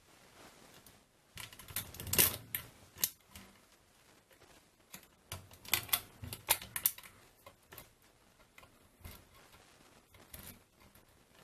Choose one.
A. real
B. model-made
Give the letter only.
A